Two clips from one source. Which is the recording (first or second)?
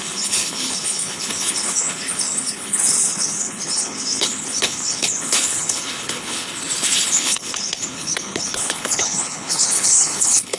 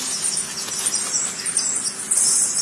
second